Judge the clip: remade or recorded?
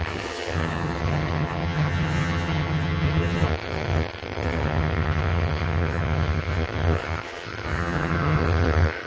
remade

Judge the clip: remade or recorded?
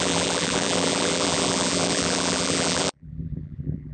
remade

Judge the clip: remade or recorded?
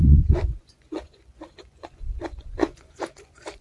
remade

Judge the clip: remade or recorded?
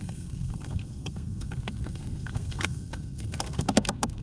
remade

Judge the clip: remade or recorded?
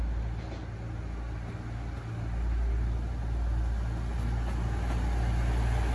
recorded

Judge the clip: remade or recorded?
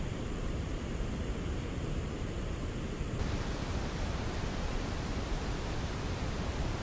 remade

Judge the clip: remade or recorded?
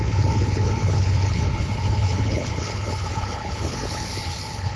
remade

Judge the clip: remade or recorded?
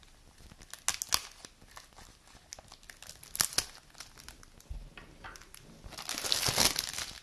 recorded